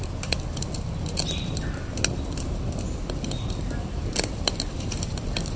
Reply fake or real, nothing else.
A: real